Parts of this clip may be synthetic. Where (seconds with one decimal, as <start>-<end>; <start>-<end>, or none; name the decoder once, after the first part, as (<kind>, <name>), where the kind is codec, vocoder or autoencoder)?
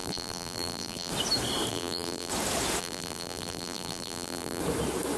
0.0-1.1 (vocoder, BigVGAN v2); 1.7-2.3; 2.8-4.6